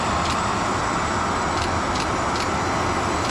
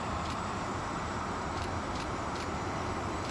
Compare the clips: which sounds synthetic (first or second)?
second